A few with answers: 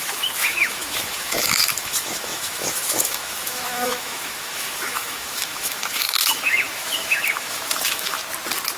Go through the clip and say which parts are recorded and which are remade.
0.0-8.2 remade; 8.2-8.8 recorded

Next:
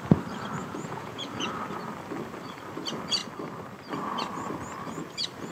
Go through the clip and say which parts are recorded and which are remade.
0.0-0.6 recorded; 0.6-1.5 remade; 1.5-5.5 recorded

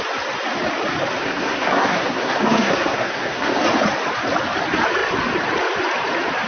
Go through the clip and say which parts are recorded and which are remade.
0.0-1.2 recorded; 1.2-3.5 remade; 3.5-6.5 recorded